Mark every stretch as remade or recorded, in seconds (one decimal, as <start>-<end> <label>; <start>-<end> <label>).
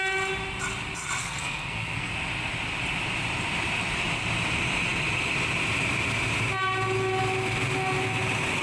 0.0-1.2 recorded; 1.2-2.1 remade; 2.1-8.6 recorded